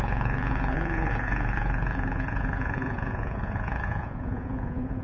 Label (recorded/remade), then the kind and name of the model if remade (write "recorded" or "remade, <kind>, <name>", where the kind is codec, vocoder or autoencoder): remade, vocoder, Vocos